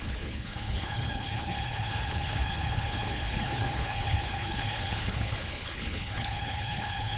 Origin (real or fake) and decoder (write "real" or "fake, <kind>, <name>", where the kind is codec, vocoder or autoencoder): fake, codec, HILCodec